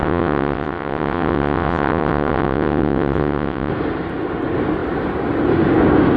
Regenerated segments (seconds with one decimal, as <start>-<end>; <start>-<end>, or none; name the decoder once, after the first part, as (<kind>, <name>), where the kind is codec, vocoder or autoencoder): 0.0-3.7 (vocoder, WaveNeXt)